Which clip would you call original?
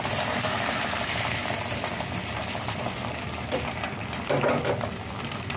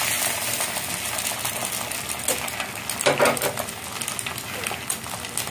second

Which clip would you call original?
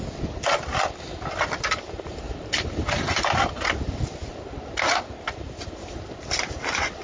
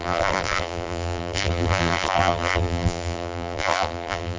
first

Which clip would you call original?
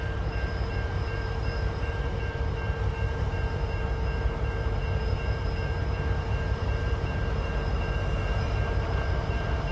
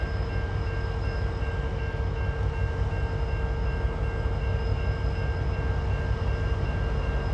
second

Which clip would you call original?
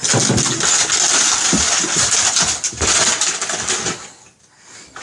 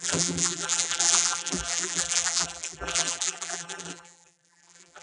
first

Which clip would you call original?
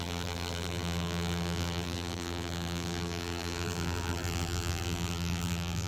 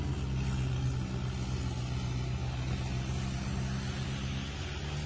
second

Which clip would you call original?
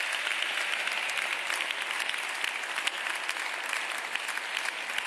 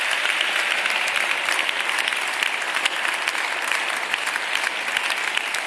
first